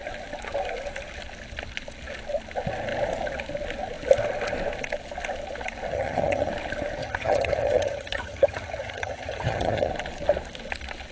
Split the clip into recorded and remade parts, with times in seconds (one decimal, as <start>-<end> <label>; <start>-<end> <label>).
0.0-5.9 recorded; 5.9-6.5 remade; 6.5-7.0 recorded; 7.0-9.9 remade; 9.9-11.1 recorded